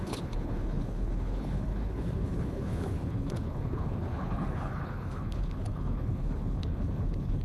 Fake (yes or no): yes